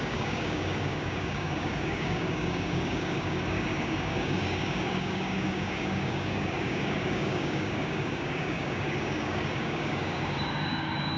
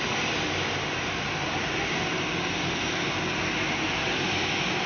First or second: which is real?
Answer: second